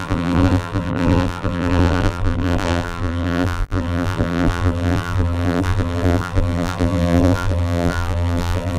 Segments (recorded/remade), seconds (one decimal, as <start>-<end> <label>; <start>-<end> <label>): 0.0-8.8 remade